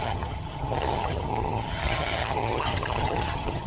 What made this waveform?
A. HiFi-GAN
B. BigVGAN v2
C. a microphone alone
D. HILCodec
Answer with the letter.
A